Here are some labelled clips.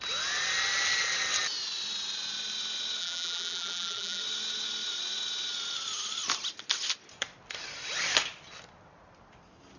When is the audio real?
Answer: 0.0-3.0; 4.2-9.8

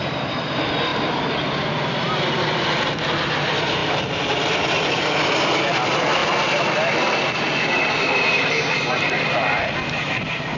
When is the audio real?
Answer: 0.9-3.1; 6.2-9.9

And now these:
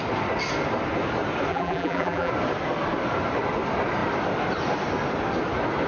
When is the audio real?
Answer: 0.0-1.5; 2.3-5.9